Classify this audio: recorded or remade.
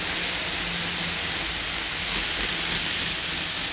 recorded